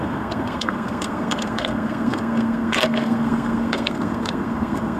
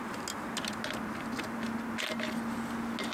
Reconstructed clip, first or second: first